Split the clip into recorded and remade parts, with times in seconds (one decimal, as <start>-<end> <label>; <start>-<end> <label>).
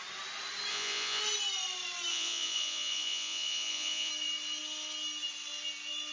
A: 0.0-0.7 recorded; 0.7-1.2 remade; 1.2-2.1 recorded; 2.1-4.1 remade; 4.1-6.1 recorded